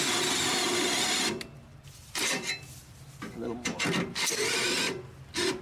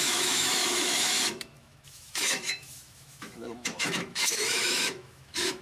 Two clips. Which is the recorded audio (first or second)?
first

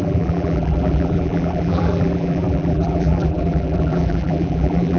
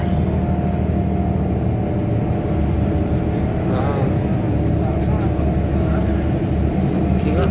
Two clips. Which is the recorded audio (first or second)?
second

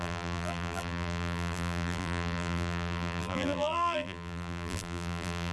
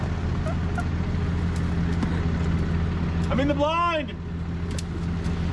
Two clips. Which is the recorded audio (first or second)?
second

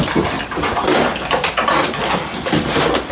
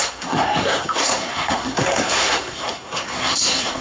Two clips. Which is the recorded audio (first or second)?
first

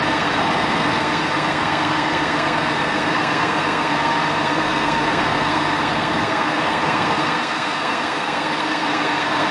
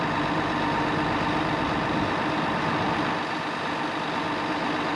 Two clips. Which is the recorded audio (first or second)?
second